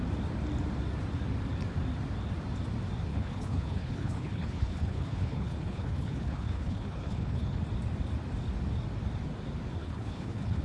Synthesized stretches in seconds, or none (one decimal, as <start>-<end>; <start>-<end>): 3.1-7.6; 9.8-10.6